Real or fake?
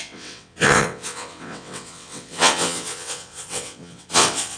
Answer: fake